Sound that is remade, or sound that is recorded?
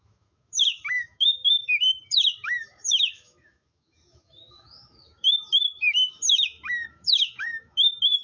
remade